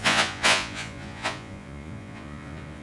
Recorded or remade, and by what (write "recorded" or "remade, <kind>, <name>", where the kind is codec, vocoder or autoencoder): remade, vocoder, Vocos